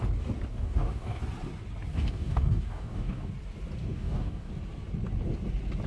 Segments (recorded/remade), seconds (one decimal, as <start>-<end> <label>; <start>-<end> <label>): 0.0-0.5 recorded; 0.5-1.2 remade; 1.2-1.9 recorded; 1.9-3.3 remade; 3.3-3.8 recorded; 3.8-4.5 remade; 4.5-5.9 recorded